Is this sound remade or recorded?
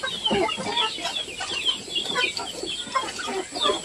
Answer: recorded